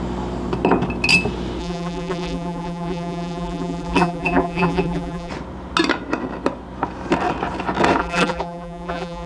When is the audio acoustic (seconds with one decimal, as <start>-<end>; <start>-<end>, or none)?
0.0-1.6; 5.3-8.0